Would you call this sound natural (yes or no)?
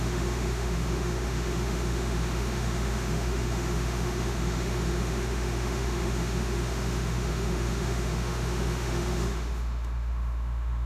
no